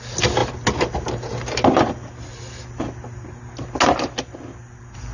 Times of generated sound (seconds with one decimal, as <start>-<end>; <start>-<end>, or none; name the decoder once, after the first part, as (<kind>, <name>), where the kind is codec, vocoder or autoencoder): none